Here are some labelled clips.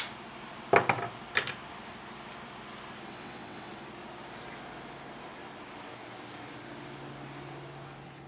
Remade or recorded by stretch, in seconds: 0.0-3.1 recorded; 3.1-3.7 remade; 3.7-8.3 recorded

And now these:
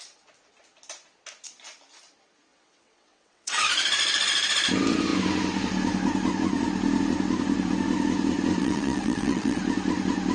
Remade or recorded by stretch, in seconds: 0.0-2.5 recorded; 2.5-3.7 remade; 3.7-8.6 recorded; 8.6-9.6 remade; 9.6-10.3 recorded

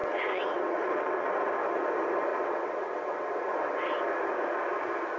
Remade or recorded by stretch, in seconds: 0.0-1.3 remade; 1.3-2.3 recorded; 2.3-4.0 remade; 4.0-5.2 recorded

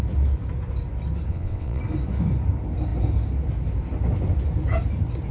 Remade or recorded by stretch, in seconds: 0.0-1.3 recorded; 1.3-1.8 remade; 1.8-5.3 recorded

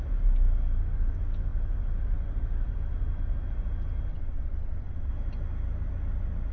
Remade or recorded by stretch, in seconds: 0.0-4.1 recorded; 4.1-5.1 remade; 5.1-6.5 recorded

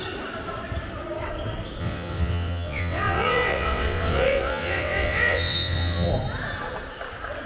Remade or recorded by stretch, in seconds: 0.0-1.8 recorded; 1.8-6.1 remade; 6.1-7.5 recorded